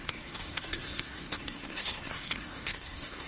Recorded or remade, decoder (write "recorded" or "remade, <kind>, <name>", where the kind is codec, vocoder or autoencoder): remade, codec, SNAC